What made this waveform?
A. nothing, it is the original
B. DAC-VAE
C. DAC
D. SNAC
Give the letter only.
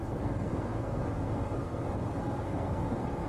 D